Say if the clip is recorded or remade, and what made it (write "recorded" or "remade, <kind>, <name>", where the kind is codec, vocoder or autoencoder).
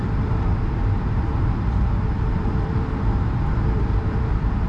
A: remade, vocoder, BigVGAN v2